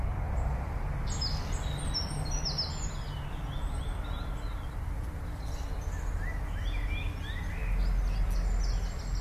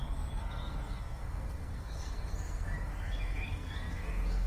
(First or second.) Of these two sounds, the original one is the first